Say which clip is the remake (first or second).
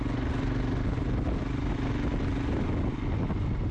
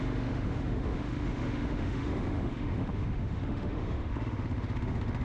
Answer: second